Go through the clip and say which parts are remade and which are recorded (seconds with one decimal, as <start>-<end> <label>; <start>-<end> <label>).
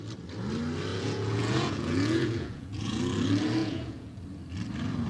0.0-0.9 recorded; 0.9-3.0 remade; 3.0-3.6 recorded; 3.6-4.2 remade; 4.2-5.1 recorded